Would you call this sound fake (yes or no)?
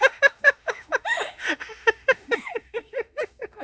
yes